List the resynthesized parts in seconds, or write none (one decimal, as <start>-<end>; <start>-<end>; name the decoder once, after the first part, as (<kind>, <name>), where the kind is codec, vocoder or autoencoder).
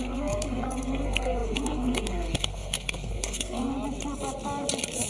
0.0-3.7 (codec, SNAC)